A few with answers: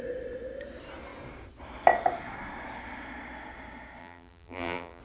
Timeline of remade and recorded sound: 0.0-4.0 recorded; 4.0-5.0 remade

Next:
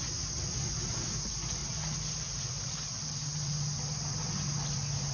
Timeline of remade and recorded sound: 0.0-1.6 recorded; 1.6-4.2 remade; 4.2-5.1 recorded

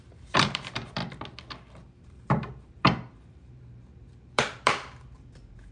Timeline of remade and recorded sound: 0.0-1.0 remade; 1.0-2.0 recorded; 2.0-5.7 remade

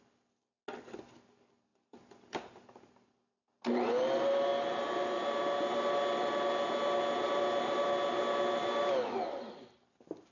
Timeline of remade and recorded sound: 0.0-1.7 recorded; 1.7-3.1 remade; 3.1-10.3 recorded

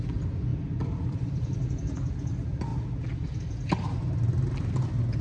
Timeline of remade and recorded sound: 0.0-0.5 recorded; 0.5-2.0 remade; 2.0-5.2 recorded

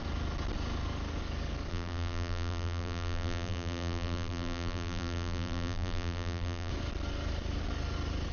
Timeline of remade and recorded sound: 0.0-1.7 recorded; 1.7-6.7 remade; 6.7-8.3 recorded

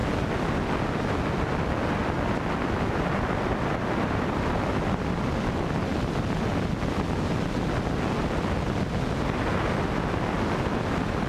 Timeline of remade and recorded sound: 0.0-2.0 recorded; 2.0-4.5 remade; 4.5-11.3 recorded

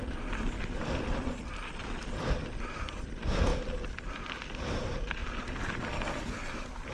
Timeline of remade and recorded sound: 0.0-5.2 remade; 5.2-5.8 recorded; 5.8-6.9 remade